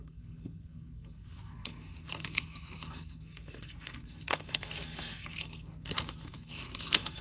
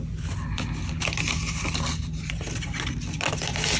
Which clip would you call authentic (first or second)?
second